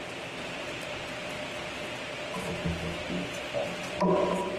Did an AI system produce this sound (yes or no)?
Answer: no